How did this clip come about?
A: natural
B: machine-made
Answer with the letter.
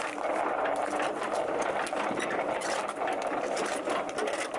A